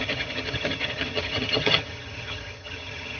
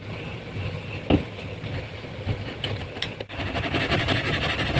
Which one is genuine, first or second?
second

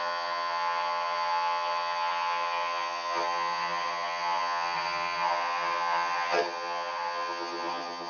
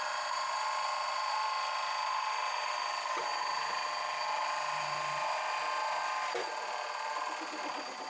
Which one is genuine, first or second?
second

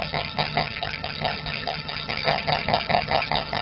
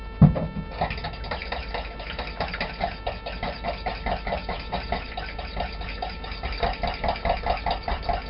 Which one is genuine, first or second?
second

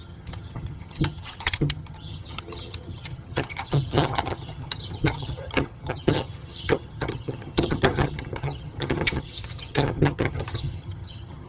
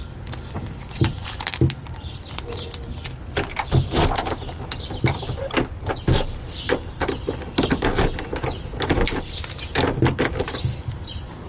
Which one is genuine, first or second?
second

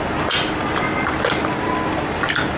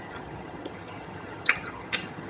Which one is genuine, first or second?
first